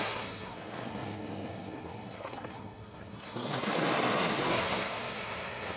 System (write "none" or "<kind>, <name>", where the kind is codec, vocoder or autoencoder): codec, SNAC